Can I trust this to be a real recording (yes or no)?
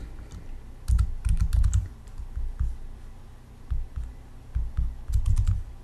yes